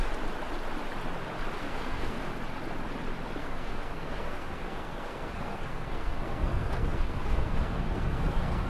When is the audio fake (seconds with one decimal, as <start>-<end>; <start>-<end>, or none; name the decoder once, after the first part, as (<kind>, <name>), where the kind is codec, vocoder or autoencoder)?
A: 1.6-2.2 (codec, SNAC); 3.4-8.7